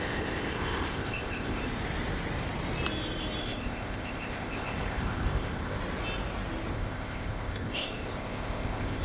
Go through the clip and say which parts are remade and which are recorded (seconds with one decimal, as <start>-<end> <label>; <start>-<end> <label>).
0.0-1.6 remade; 1.6-3.4 recorded; 3.4-5.8 remade; 5.8-6.7 recorded; 6.7-9.0 remade